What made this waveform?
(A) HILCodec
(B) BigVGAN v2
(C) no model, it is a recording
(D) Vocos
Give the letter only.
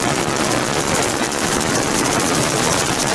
D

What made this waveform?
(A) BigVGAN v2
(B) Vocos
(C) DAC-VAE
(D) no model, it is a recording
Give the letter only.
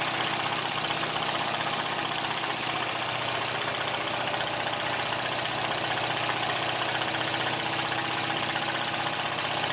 D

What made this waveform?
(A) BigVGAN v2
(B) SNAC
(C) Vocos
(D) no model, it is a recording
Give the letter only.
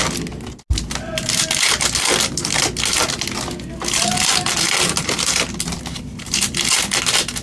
D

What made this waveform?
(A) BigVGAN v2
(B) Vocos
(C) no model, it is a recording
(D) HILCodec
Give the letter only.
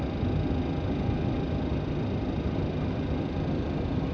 C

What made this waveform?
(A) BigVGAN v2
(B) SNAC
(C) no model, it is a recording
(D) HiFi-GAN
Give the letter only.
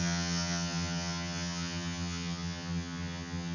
D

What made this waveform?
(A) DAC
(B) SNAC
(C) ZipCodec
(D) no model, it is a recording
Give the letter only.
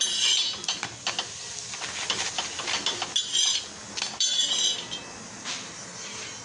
D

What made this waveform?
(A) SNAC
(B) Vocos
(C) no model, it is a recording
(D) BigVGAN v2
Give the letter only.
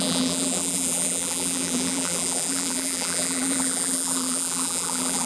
D